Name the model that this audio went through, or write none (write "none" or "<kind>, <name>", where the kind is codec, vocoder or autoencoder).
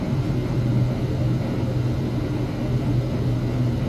none